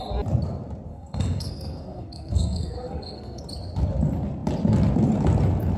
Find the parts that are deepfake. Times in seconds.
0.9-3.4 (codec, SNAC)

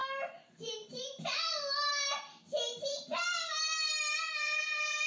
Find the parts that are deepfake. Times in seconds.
4.4-5.1 (codec, SNAC)

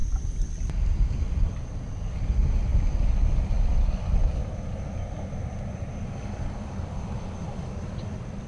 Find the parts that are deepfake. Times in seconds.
none